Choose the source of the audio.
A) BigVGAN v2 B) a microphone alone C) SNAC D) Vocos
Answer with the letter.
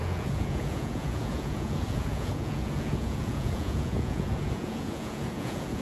D